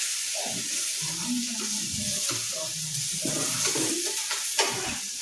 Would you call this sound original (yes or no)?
yes